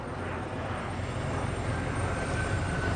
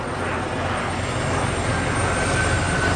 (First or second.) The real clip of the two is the second